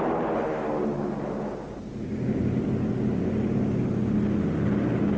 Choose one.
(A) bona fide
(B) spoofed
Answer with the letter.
A